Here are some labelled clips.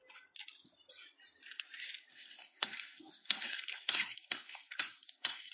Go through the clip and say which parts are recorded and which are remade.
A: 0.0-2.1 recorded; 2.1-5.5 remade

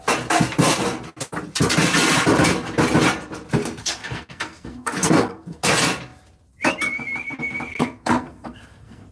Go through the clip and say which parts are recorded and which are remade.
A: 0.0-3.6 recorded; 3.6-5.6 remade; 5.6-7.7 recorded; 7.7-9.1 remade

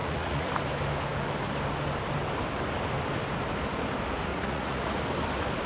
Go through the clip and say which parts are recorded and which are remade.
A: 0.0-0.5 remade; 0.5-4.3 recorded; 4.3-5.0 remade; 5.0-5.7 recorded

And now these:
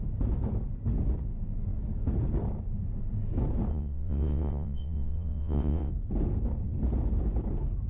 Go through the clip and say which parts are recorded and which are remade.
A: 0.0-3.7 recorded; 3.7-5.9 remade; 5.9-7.9 recorded

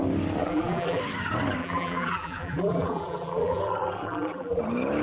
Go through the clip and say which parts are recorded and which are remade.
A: 0.0-0.4 recorded; 0.4-1.0 remade; 1.0-1.6 recorded; 1.6-4.6 remade; 4.6-5.0 recorded

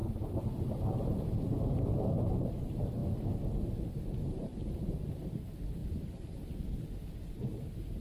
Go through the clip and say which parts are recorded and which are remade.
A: 0.0-3.0 remade; 3.0-4.2 recorded; 4.2-5.8 remade; 5.8-7.3 recorded; 7.3-8.0 remade

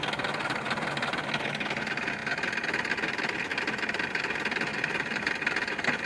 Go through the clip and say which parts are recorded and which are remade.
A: 0.0-4.7 recorded; 4.7-5.3 remade; 5.3-6.1 recorded

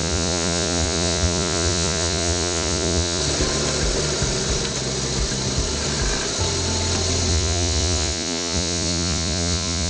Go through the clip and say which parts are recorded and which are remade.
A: 0.0-3.2 remade; 3.2-7.3 recorded; 7.3-9.9 remade